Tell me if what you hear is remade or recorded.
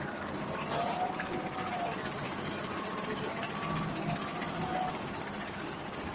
recorded